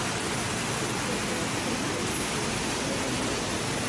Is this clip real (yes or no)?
yes